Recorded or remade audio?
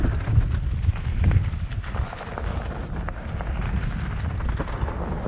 recorded